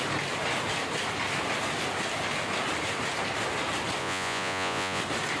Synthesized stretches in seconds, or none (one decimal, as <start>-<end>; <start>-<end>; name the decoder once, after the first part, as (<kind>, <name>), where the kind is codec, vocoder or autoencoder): 4.0-5.0 (vocoder, Vocos)